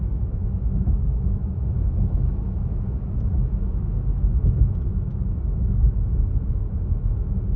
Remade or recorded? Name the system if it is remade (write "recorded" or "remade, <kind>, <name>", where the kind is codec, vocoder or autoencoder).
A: remade, autoencoder, DAC-VAE